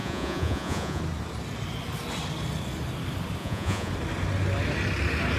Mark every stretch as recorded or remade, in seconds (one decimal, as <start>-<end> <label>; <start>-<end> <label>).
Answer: 0.0-1.0 remade; 1.0-3.4 recorded; 3.4-3.9 remade; 3.9-5.4 recorded